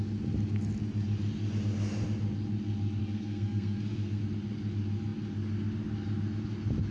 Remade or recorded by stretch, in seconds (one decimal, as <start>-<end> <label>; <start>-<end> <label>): 0.0-3.0 recorded; 3.0-4.2 remade; 4.2-6.9 recorded